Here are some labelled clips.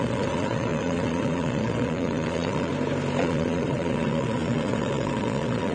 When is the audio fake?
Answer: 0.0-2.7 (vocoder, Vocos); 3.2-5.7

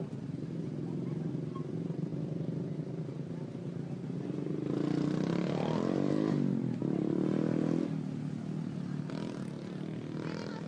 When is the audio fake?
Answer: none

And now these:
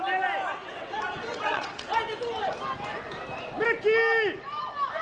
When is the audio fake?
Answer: 0.5-2.0 (vocoder, WaveNeXt)